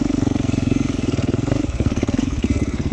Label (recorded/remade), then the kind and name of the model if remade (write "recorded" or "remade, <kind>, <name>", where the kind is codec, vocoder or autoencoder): remade, codec, SNAC